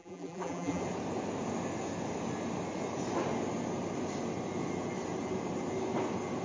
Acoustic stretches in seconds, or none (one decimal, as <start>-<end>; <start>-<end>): 0.8-6.4